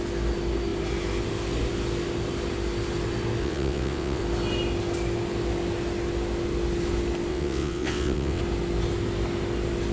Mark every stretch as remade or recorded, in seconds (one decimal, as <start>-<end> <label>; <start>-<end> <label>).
0.0-3.4 recorded; 3.4-4.2 remade; 4.2-7.3 recorded; 7.3-8.4 remade; 8.4-9.9 recorded